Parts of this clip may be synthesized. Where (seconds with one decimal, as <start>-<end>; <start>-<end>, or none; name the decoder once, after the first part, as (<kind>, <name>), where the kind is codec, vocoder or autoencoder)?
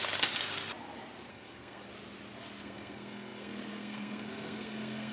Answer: 1.3-1.9 (codec, SNAC); 2.6-5.1